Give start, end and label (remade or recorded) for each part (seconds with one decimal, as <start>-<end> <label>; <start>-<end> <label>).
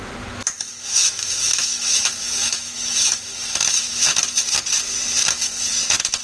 0.0-0.7 recorded; 0.7-4.1 remade; 4.1-5.2 recorded; 5.2-5.8 remade; 5.8-6.2 recorded